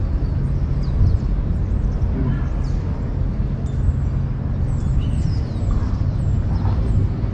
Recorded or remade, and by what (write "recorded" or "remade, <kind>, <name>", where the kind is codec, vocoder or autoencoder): recorded